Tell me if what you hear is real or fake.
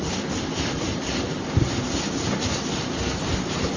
fake